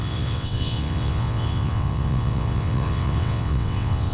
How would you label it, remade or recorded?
remade